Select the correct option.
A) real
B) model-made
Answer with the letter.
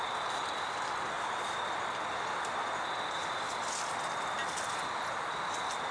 A